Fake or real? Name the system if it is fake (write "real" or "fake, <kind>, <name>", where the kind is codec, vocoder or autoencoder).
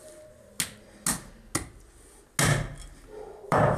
real